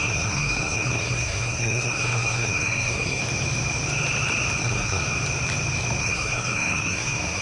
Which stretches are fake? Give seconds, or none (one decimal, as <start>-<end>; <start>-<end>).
0.0-3.2; 4.6-5.0; 6.0-7.4